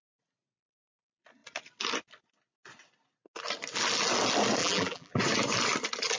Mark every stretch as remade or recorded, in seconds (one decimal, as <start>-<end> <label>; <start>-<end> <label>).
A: 0.0-4.6 recorded; 4.6-5.2 remade; 5.2-6.2 recorded